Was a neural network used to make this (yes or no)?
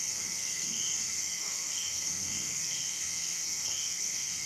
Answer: yes